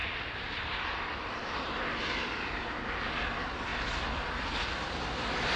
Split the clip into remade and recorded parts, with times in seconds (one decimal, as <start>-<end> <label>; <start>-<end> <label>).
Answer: 0.0-5.6 recorded